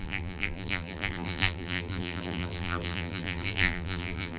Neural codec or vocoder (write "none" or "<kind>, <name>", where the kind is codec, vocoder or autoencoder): vocoder, BigVGAN v2